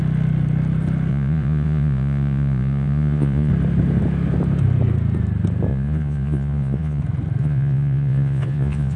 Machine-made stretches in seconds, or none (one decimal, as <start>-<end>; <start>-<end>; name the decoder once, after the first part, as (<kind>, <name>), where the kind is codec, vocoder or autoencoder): 1.1-3.5 (vocoder, Vocos); 5.7-7.0; 7.4-9.0